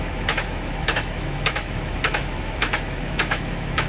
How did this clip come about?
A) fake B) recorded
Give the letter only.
A